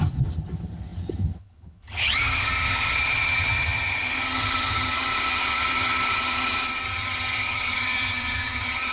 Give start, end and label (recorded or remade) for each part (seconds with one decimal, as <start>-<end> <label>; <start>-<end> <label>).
0.0-8.9 remade